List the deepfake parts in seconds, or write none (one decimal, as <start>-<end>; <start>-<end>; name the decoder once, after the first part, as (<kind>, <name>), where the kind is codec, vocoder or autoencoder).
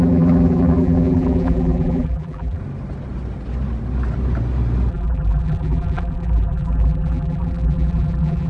0.0-2.6 (vocoder, BigVGAN v2); 4.9-8.5